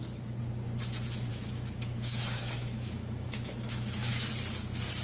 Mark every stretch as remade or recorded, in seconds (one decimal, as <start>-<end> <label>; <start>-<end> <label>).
0.0-1.3 recorded; 1.3-4.3 remade; 4.3-5.0 recorded

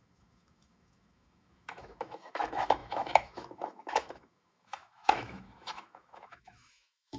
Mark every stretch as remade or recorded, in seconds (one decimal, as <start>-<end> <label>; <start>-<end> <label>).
0.0-7.2 remade

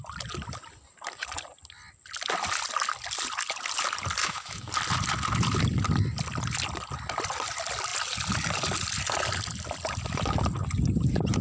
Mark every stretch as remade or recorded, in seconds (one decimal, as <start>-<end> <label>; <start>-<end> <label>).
0.0-4.2 recorded; 4.2-4.7 remade; 4.7-11.4 recorded

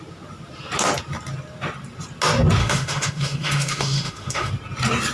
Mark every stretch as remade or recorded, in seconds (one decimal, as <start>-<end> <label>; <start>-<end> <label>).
0.0-2.6 recorded; 2.6-4.5 remade; 4.5-5.1 recorded

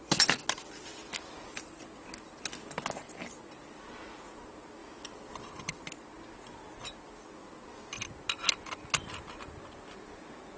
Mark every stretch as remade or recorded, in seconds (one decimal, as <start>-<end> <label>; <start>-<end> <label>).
0.0-10.6 recorded

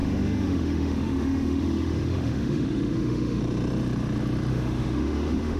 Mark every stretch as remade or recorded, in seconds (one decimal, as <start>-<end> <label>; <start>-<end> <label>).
0.0-3.4 remade; 3.4-4.5 recorded; 4.5-5.6 remade